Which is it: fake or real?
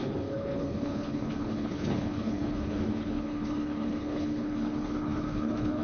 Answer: fake